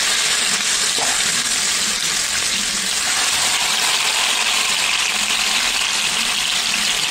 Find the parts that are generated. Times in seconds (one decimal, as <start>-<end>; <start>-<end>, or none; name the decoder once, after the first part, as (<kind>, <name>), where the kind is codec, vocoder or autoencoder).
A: none